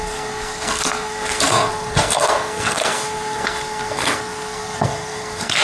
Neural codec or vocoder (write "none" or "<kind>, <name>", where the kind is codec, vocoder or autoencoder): codec, SNAC